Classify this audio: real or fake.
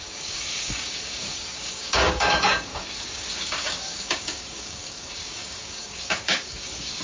fake